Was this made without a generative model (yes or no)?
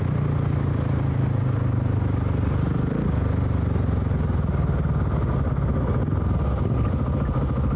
yes